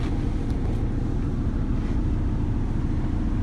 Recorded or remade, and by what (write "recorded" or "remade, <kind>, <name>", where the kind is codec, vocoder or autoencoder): recorded